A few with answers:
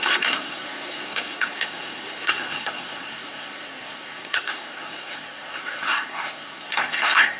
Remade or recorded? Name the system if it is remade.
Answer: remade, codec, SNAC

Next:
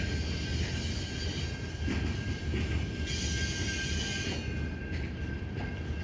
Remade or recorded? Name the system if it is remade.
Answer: recorded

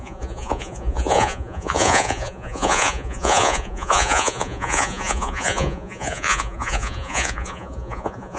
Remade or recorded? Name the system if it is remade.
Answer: remade, vocoder, Vocos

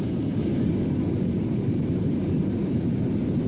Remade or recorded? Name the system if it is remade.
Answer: recorded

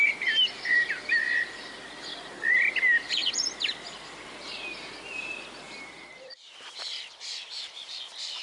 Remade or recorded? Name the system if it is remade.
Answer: remade, vocoder, BigVGAN v2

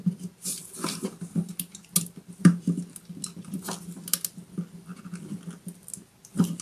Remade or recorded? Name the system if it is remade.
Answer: recorded